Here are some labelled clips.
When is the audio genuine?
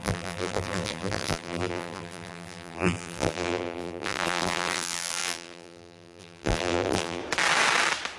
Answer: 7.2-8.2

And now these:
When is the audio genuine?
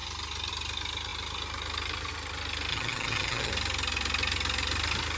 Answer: 0.0-2.7; 3.5-5.2